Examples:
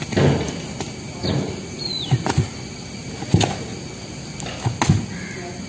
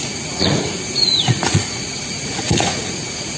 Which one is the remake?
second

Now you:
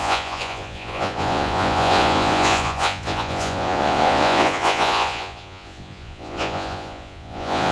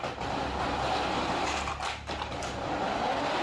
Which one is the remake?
first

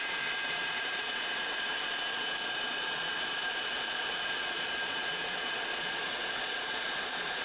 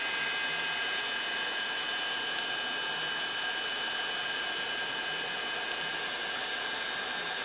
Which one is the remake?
first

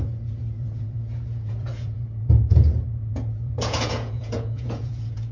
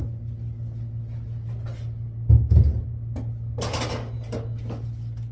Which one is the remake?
first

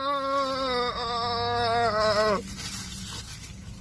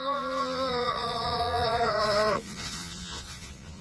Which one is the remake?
second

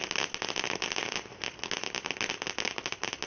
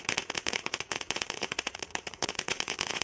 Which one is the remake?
second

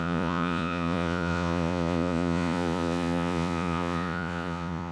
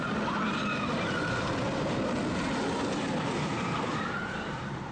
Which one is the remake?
first